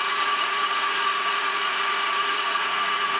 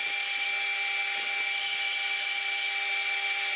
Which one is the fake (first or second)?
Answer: first